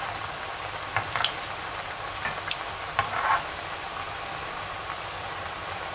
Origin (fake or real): real